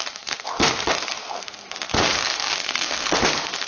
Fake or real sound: fake